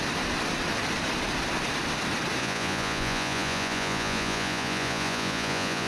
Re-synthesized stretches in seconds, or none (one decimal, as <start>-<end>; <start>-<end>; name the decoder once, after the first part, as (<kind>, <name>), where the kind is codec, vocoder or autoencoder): 2.4-5.9 (vocoder, Vocos)